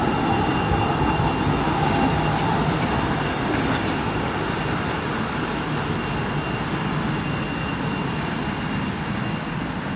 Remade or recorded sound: recorded